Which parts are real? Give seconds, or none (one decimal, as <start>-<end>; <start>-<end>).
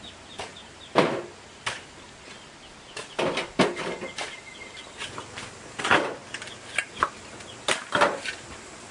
0.5-2.3; 6.2-7.6